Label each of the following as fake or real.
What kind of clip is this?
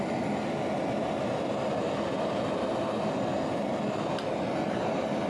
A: real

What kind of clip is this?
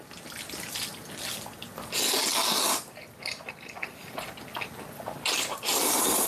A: real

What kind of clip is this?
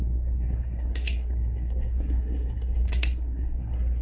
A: fake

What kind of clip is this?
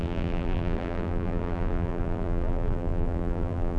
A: fake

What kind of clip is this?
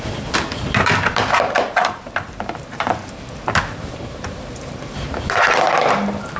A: fake